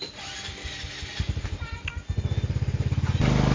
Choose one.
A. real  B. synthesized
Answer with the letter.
A